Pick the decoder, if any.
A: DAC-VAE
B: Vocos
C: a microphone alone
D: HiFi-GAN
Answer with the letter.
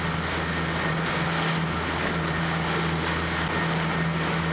C